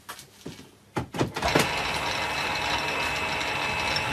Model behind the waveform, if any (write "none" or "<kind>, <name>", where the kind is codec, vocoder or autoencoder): none